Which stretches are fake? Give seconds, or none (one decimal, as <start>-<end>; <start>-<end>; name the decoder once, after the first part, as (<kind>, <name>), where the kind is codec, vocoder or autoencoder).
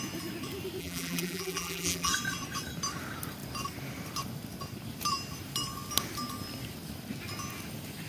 0.8-2.1 (vocoder, BigVGAN v2)